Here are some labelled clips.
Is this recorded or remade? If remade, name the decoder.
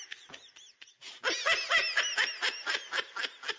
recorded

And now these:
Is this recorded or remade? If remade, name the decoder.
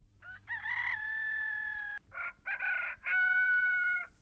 remade, vocoder, BigVGAN v2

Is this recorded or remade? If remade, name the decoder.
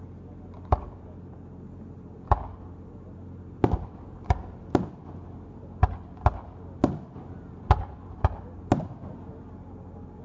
recorded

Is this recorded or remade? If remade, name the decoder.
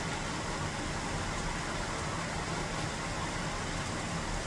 recorded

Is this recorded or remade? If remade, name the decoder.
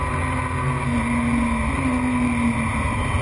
recorded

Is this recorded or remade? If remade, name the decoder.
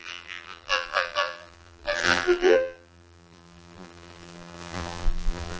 remade, vocoder, BigVGAN v2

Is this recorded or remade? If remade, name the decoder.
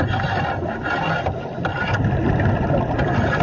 recorded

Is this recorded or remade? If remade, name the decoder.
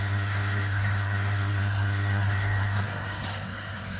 remade, codec, SNAC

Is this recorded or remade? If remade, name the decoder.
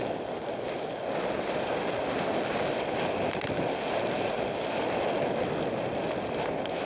recorded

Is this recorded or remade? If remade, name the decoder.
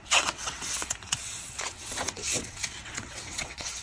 remade, vocoder, WaveNeXt